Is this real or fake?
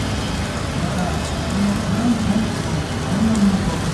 real